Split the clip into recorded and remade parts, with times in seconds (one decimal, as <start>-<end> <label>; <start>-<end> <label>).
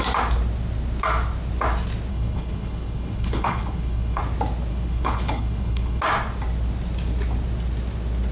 0.0-2.1 recorded; 2.1-4.2 remade; 4.2-4.7 recorded; 4.7-6.0 remade; 6.0-8.3 recorded